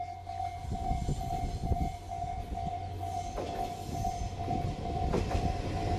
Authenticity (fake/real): real